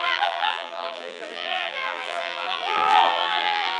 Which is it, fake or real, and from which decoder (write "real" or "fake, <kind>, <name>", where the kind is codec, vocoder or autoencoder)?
fake, vocoder, BigVGAN v2